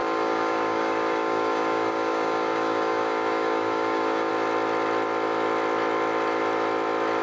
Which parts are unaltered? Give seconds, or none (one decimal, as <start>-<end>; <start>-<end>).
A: 4.3-7.2